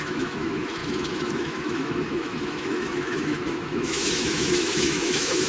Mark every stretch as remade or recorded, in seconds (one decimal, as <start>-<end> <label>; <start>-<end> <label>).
0.0-5.5 remade